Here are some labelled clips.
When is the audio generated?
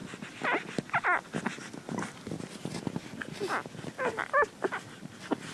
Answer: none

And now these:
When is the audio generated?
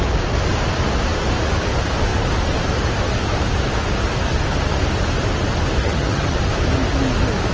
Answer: 5.8-6.4 (vocoder, HiFi-GAN)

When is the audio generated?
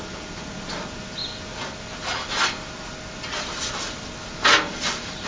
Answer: none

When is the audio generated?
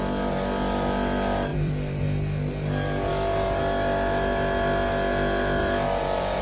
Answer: 1.5-2.0 (vocoder, BigVGAN v2); 5.6-6.4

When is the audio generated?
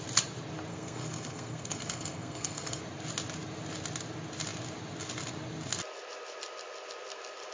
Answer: 0.7-2.8 (codec, SNAC)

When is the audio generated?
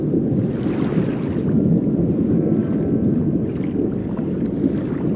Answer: 4.0-4.5 (codec, DAC)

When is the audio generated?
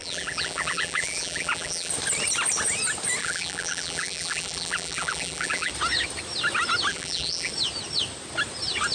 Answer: 0.0-1.9 (vocoder, BigVGAN v2); 3.2-5.7; 6.9-7.5